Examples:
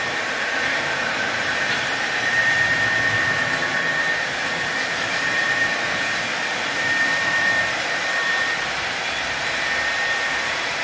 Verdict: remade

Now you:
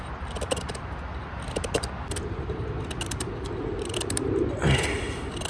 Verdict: remade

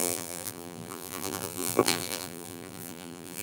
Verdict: remade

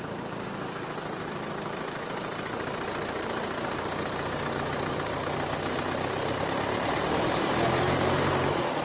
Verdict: remade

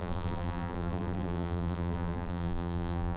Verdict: remade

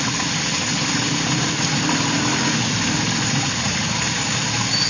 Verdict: recorded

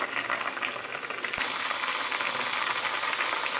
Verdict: recorded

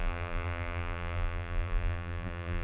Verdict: remade